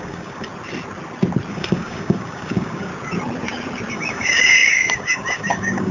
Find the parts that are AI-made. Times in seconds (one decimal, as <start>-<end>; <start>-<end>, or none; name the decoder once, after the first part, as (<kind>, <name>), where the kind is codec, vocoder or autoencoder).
0.0-0.5 (codec, DAC); 1.5-2.9; 3.9-5.9